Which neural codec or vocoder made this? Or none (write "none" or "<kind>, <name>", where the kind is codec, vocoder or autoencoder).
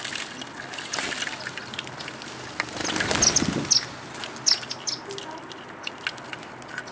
none